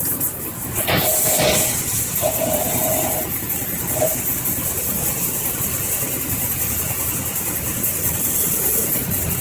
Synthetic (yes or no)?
yes